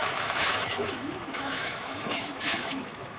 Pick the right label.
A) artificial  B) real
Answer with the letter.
A